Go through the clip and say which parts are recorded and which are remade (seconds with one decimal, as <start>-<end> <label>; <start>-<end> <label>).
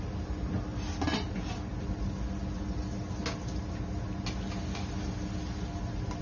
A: 0.0-6.2 recorded